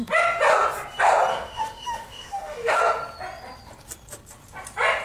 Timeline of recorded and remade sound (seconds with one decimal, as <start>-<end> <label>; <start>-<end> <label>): 0.0-1.3 recorded; 1.3-2.8 remade; 2.8-5.0 recorded